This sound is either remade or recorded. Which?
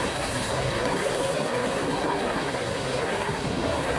remade